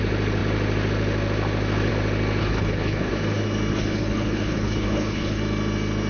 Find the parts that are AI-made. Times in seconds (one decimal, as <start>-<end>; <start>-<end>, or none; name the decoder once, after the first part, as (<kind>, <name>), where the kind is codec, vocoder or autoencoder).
2.4-3.1 (codec, HILCodec); 3.7-5.4